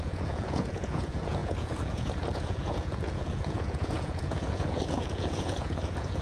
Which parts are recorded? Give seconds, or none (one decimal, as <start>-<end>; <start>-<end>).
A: none